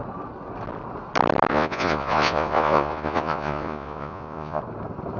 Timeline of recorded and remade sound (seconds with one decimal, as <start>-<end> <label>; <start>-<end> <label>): 0.0-1.5 recorded; 1.5-4.6 remade; 4.6-5.2 recorded